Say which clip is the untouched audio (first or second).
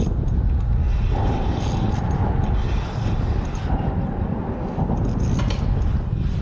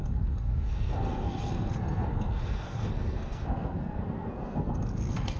first